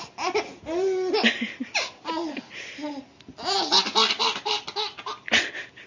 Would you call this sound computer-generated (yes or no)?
no